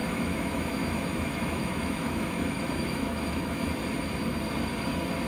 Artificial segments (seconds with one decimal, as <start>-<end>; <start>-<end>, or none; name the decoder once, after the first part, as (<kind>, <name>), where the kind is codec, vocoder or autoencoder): 0.0-3.8 (autoencoder, DAC-VAE)